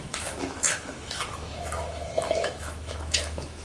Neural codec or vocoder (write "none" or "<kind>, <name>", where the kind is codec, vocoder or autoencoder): autoencoder, DAC-VAE